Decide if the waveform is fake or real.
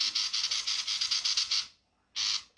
real